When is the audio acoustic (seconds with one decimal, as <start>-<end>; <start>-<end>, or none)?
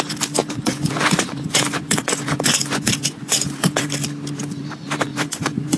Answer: 0.0-0.4; 3.9-5.1